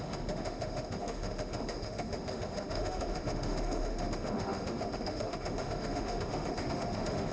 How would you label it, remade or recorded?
remade